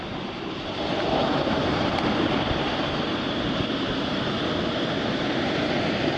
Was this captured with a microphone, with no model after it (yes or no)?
no